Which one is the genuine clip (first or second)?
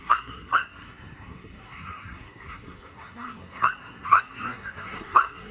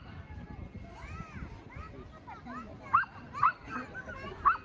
second